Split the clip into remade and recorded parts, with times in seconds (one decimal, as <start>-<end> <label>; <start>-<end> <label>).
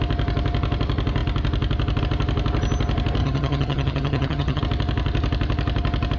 0.0-3.2 recorded; 3.2-4.6 remade; 4.6-6.2 recorded